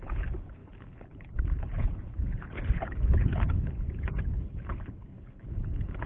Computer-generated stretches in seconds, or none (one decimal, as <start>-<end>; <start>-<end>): 0.0-6.1